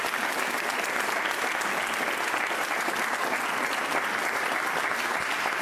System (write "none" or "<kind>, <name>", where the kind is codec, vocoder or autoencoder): none